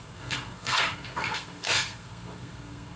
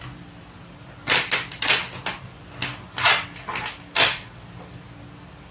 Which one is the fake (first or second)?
first